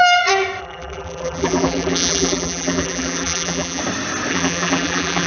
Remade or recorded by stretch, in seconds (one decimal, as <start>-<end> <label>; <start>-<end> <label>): 0.0-0.6 recorded; 0.6-3.8 remade; 3.8-4.3 recorded; 4.3-5.3 remade